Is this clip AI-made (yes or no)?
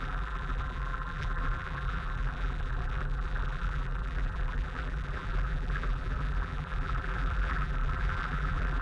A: yes